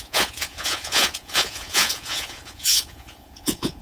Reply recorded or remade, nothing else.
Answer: remade